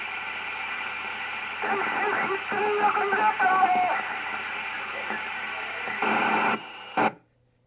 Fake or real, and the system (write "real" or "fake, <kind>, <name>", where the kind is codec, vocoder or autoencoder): real